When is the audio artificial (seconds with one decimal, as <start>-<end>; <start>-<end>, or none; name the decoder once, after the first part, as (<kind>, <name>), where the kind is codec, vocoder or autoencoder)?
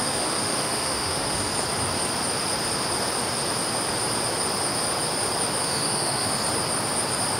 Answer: 0.0-1.5 (autoencoder, DAC-VAE); 5.6-6.3